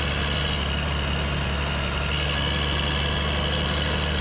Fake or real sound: real